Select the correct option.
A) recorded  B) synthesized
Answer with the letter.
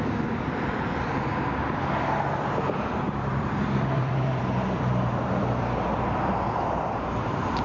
B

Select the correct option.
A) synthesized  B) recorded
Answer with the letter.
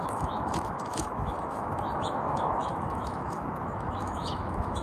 A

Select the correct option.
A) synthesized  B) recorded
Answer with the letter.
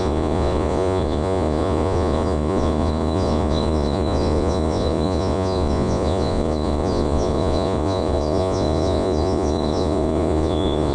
A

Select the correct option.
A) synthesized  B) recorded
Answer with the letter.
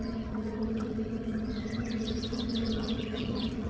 A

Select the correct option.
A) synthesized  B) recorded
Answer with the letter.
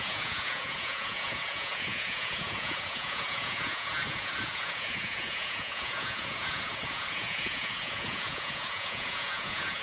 A